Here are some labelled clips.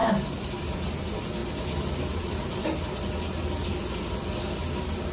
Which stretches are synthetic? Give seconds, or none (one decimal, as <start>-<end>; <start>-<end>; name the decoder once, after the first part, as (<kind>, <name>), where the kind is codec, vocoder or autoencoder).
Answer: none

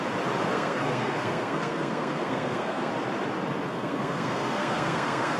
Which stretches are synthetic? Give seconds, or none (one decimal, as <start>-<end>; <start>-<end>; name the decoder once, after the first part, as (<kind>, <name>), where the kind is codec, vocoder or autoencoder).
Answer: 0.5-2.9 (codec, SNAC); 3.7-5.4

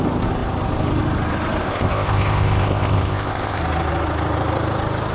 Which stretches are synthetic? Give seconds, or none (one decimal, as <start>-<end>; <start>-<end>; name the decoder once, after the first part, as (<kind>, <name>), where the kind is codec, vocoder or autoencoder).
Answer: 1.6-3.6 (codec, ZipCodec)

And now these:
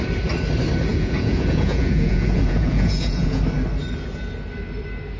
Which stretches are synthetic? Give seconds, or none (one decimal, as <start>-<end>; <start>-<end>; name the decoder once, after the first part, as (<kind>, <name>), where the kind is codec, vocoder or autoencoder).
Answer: 0.9-3.4 (vocoder, Vocos)